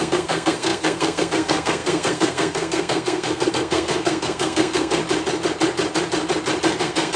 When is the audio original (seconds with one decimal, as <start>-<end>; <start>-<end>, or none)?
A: 5.0-6.8